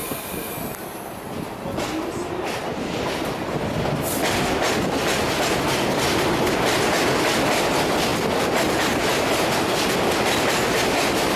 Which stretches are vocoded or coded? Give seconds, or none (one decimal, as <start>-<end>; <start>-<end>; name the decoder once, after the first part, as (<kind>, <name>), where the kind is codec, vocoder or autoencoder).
none